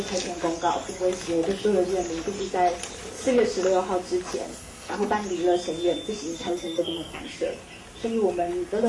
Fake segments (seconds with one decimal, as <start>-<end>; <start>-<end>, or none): 4.5-5.1; 6.3-7.2